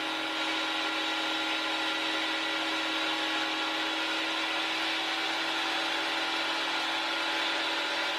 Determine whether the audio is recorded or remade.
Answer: recorded